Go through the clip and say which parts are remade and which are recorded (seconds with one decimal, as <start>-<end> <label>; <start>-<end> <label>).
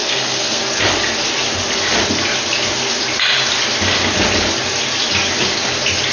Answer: 0.0-0.6 remade; 0.6-6.1 recorded